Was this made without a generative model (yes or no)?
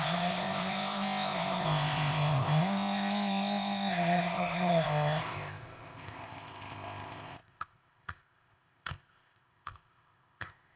no